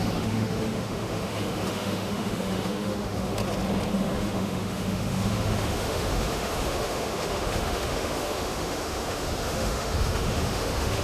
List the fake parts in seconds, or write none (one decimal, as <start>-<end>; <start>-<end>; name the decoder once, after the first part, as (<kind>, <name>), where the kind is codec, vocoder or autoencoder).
0.0-3.4 (autoencoder, DAC-VAE); 3.9-11.0